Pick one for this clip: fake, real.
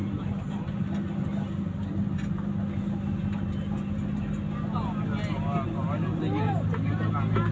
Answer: real